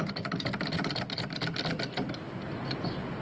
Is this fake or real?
real